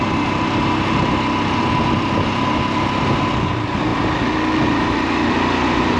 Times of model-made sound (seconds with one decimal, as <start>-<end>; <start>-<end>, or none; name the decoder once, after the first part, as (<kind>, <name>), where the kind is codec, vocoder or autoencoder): none